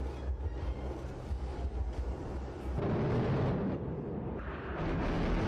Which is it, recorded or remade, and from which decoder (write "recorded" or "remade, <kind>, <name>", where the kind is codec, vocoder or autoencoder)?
recorded